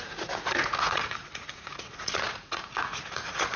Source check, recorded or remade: remade